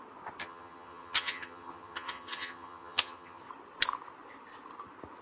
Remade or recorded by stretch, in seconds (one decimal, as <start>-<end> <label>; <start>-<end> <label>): 0.0-0.4 recorded; 0.4-3.4 remade; 3.4-5.2 recorded